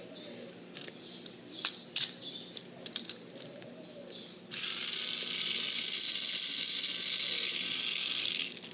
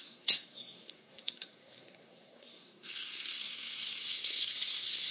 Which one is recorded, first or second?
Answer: first